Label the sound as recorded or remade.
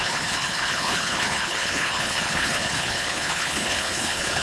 remade